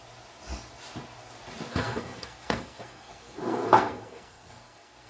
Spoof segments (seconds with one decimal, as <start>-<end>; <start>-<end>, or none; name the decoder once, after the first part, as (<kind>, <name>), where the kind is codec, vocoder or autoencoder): 1.7-5.1 (codec, SNAC)